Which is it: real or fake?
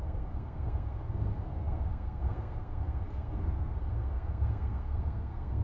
fake